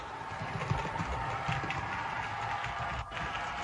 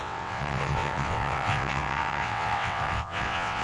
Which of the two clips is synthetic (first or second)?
second